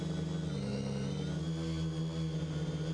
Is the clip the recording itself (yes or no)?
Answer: yes